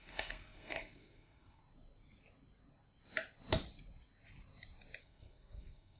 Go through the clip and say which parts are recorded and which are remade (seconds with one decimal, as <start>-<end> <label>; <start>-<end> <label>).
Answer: 0.0-1.6 remade; 1.6-5.0 recorded; 5.0-6.0 remade